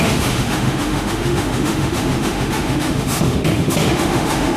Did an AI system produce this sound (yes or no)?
yes